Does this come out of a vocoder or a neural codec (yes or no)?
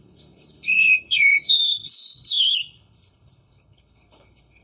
yes